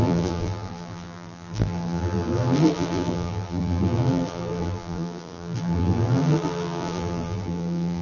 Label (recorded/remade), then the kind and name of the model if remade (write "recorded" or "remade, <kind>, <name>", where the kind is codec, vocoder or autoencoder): remade, vocoder, BigVGAN v2